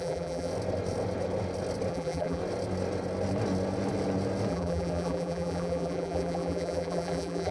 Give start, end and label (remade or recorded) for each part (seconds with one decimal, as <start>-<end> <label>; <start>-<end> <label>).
0.0-0.5 remade; 0.5-1.9 recorded; 1.9-2.4 remade; 2.4-4.5 recorded; 4.5-7.5 remade